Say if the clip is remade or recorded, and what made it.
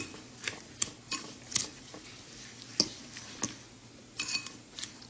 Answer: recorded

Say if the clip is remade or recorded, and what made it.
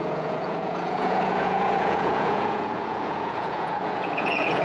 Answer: remade, vocoder, Vocos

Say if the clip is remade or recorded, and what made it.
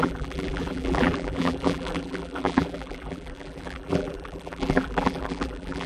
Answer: remade, vocoder, BigVGAN v2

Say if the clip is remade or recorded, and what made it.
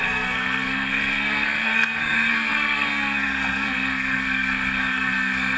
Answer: remade, codec, SNAC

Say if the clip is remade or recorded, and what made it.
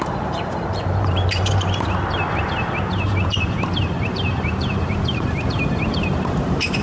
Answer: remade, vocoder, BigVGAN v2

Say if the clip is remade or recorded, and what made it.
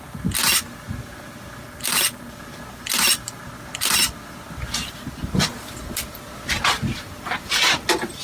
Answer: recorded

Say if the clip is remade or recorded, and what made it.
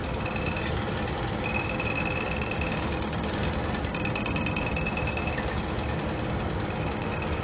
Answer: recorded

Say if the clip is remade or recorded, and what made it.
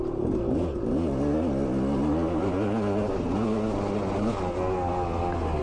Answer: recorded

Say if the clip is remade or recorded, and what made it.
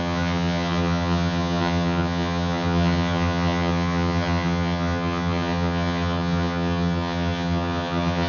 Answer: remade, vocoder, HiFi-GAN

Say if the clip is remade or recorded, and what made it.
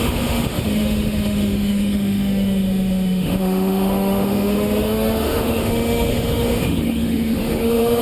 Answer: remade, autoencoder, DAC-VAE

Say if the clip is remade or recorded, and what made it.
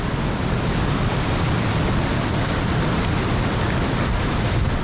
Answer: recorded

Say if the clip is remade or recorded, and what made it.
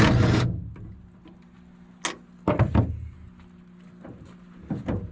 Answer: recorded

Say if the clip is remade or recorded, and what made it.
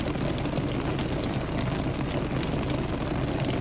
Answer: recorded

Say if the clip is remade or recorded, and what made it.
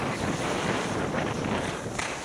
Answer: recorded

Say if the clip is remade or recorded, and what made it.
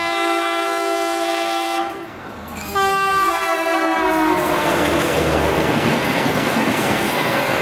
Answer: remade, codec, SNAC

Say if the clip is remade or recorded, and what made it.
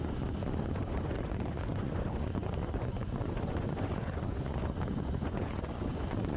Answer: remade, vocoder, Vocos